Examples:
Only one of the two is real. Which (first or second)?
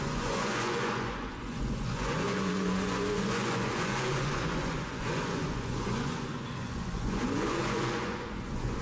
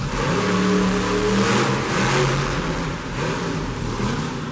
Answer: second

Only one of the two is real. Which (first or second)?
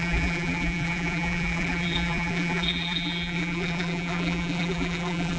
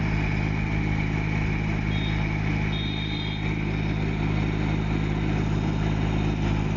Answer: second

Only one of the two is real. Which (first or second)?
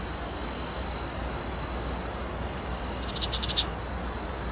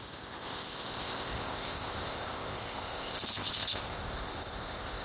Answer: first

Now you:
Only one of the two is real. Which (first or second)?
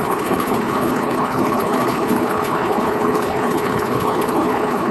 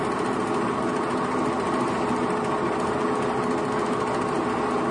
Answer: second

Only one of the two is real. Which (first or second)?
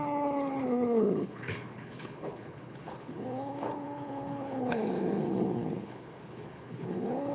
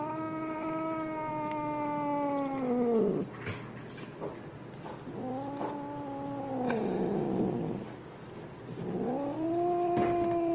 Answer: second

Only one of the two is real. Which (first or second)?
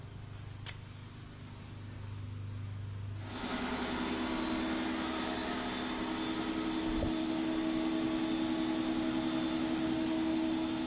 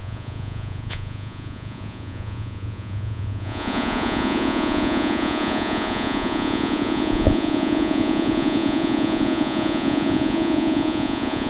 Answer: first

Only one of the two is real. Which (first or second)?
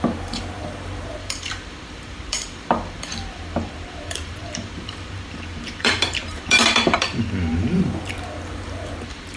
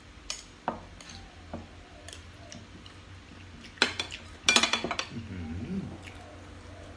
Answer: second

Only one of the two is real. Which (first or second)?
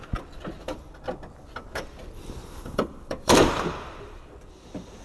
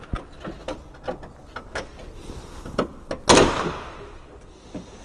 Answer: second